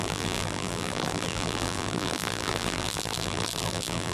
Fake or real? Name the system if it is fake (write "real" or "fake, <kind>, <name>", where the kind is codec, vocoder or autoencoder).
fake, vocoder, BigVGAN v2